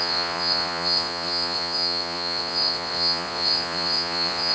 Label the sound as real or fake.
fake